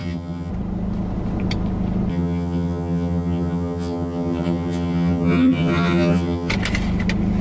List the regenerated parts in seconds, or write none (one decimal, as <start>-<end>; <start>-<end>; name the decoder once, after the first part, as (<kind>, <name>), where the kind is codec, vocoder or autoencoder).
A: 0.0-0.5 (vocoder, HiFi-GAN); 2.1-6.5